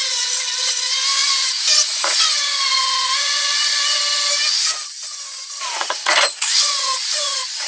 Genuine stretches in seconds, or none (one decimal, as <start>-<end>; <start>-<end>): 4.0-4.8